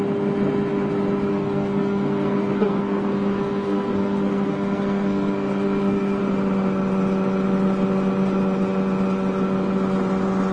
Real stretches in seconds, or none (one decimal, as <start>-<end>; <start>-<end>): 0.0-1.3; 6.2-10.5